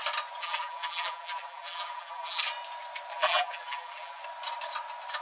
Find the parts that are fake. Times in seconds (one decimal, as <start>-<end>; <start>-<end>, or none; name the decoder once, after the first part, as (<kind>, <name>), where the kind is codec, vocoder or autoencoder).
0.4-2.4 (vocoder, BigVGAN v2); 3.1-4.2